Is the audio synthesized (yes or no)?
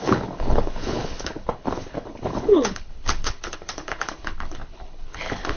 yes